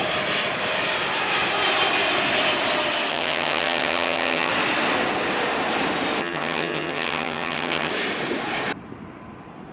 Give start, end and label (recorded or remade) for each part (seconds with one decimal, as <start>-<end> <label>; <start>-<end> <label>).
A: 0.0-3.1 recorded; 3.1-4.5 remade; 4.5-6.2 recorded; 6.2-7.9 remade; 7.9-9.7 recorded